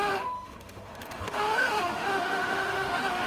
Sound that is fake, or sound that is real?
fake